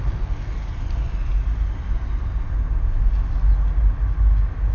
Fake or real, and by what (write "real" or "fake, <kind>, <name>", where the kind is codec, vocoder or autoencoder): real